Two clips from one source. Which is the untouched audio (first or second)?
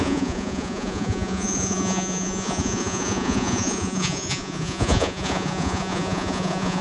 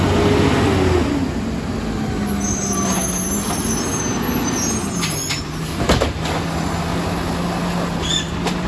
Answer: second